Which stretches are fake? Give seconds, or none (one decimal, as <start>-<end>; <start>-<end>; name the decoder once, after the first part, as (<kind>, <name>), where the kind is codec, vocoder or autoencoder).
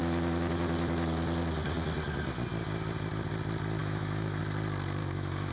3.8-4.4 (autoencoder, DAC-VAE); 5.0-5.5